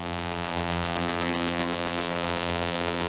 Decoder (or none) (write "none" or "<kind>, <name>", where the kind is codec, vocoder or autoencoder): vocoder, BigVGAN v2